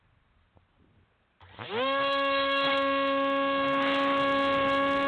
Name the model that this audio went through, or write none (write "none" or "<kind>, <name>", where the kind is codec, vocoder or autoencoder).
none